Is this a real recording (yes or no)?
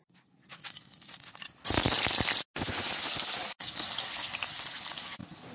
yes